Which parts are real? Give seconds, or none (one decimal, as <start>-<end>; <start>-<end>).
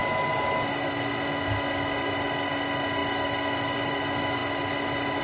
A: 0.0-5.2